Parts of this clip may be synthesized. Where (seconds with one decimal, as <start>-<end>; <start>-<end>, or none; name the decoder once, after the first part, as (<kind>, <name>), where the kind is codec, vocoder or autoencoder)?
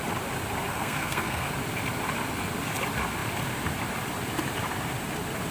0.7-1.5 (codec, SNAC)